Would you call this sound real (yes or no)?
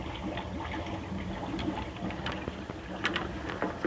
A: yes